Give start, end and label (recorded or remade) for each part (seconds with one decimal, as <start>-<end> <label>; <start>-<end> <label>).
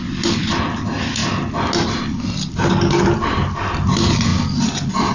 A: 0.0-5.1 recorded